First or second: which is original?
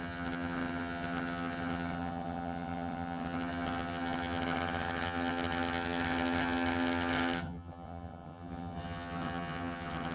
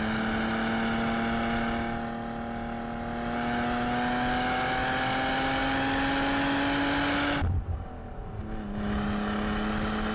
second